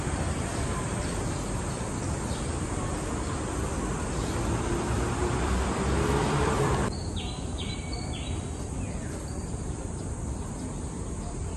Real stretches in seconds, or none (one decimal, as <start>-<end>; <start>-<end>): 7.0-7.7